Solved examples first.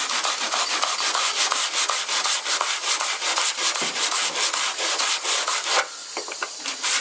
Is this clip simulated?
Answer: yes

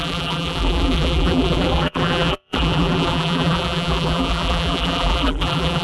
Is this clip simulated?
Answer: yes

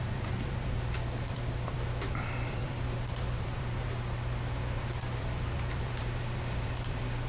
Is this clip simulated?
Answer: yes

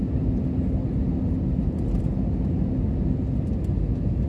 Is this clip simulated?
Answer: no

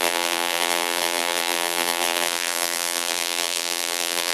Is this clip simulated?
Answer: yes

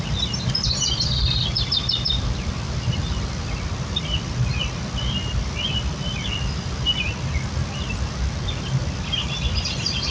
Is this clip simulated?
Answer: yes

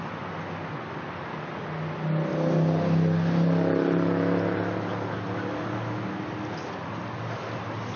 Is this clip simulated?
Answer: no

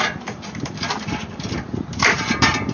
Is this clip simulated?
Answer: yes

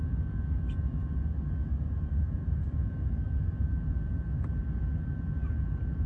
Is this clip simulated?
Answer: no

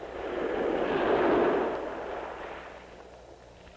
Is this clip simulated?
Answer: no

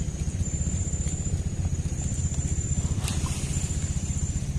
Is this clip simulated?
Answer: yes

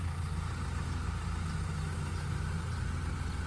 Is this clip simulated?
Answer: no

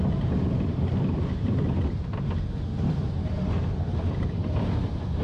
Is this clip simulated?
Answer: yes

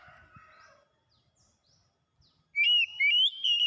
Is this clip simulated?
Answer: no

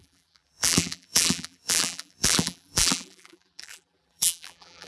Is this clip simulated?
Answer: yes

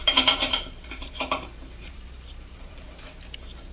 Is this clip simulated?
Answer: yes